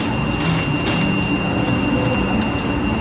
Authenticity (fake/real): real